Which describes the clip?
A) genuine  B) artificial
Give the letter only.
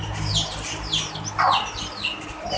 B